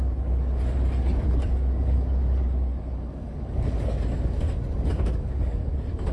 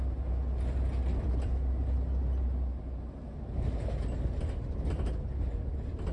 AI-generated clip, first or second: first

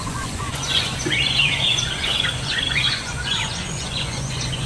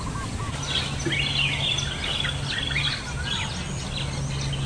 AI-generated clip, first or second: first